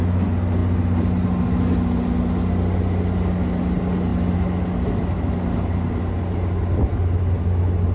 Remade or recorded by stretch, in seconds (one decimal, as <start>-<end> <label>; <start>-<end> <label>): 0.0-7.9 recorded